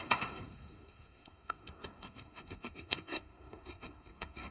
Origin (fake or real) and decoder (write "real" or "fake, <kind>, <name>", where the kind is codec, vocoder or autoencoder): fake, codec, SNAC